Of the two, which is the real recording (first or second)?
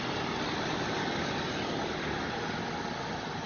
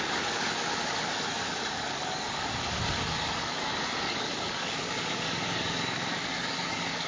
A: first